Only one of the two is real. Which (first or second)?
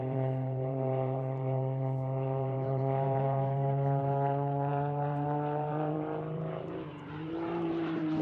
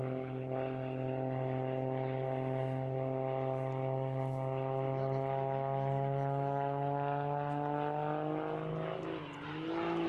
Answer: second